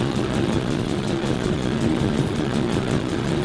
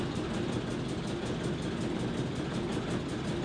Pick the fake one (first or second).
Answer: first